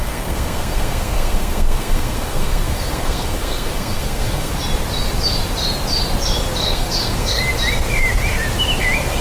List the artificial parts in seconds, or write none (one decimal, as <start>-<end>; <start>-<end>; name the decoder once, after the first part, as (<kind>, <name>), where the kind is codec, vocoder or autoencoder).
0.0-4.5 (codec, SNAC); 6.6-7.4